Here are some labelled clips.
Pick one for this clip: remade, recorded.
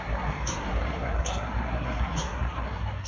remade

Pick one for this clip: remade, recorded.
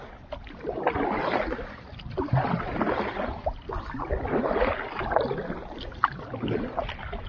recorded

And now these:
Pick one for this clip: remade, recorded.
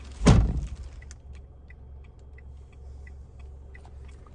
recorded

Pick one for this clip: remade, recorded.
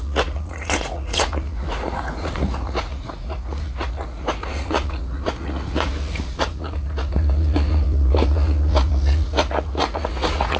remade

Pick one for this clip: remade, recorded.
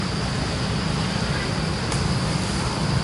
recorded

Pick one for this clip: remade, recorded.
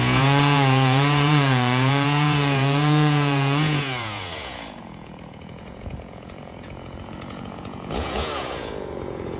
remade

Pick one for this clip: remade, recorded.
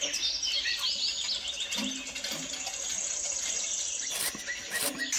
recorded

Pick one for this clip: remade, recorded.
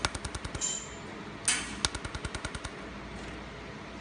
recorded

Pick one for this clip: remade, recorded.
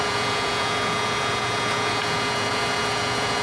remade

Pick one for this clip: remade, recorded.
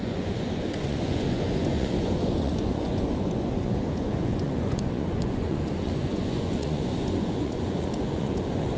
remade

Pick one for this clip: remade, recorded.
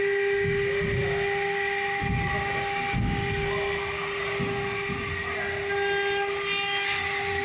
recorded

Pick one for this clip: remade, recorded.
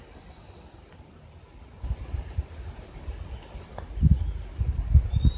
recorded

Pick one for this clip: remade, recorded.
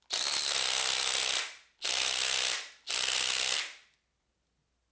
recorded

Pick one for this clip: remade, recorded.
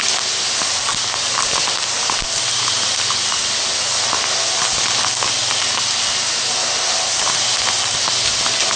recorded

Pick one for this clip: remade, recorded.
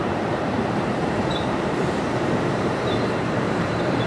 remade